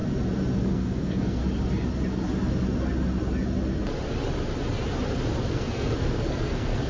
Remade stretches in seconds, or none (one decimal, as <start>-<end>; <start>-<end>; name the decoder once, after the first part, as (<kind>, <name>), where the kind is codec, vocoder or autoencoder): 0.6-1.4 (codec, SNAC); 5.5-6.9

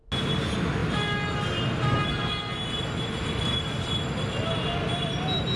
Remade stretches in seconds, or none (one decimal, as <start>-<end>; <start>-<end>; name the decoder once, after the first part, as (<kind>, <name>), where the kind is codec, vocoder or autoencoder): none

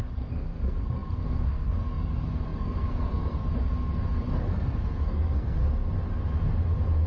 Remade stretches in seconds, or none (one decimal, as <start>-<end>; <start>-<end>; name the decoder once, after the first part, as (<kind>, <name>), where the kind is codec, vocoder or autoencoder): 0.0-3.5 (codec, SNAC); 4.4-5.6